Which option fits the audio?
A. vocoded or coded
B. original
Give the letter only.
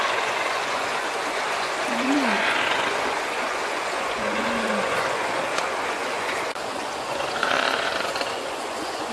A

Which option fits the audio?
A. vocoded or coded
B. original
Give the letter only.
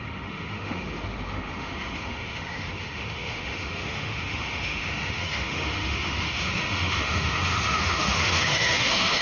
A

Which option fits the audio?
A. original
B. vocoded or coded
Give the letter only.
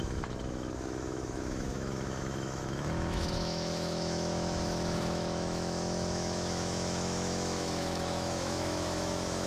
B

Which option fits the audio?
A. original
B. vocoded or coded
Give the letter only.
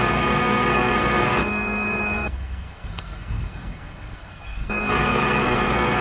B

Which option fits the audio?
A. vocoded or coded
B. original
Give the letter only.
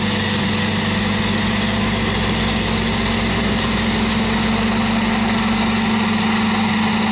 B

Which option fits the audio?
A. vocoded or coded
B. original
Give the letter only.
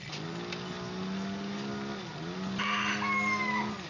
B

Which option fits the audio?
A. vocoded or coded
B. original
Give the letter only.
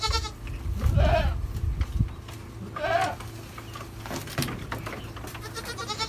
B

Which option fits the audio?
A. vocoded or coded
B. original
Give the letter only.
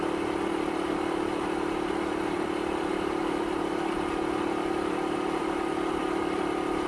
A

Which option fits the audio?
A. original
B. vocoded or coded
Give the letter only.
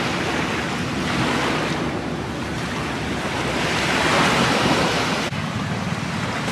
A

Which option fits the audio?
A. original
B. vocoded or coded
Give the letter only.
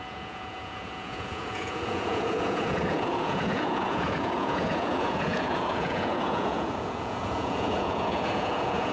B